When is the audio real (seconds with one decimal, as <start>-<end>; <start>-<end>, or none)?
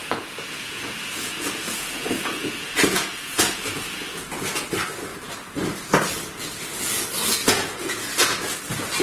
4.6-7.4; 8.2-9.0